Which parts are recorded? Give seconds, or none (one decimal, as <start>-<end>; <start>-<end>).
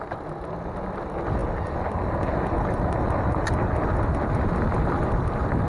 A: 0.0-5.7